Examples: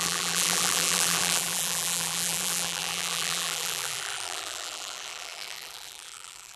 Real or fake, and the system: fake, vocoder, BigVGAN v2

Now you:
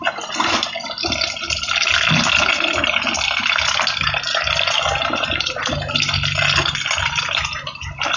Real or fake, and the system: real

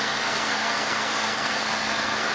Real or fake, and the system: fake, codec, SNAC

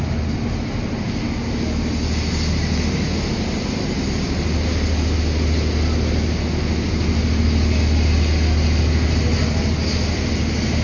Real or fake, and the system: real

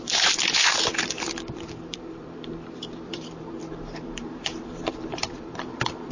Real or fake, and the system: fake, vocoder, BigVGAN v2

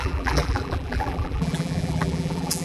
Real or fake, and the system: fake, vocoder, BigVGAN v2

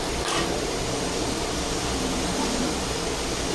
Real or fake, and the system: real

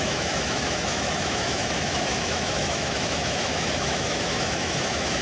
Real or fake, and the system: fake, autoencoder, DAC-VAE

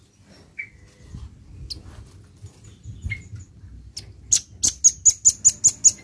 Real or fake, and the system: real